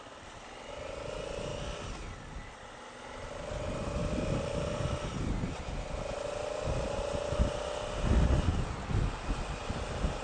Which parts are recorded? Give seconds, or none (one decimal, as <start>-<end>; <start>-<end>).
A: 0.0-10.2